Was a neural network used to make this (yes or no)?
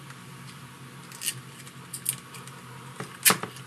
no